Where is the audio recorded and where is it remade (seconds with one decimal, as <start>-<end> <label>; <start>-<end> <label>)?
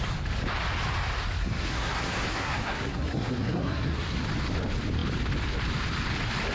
0.0-1.4 recorded; 1.4-4.2 remade; 4.2-6.5 recorded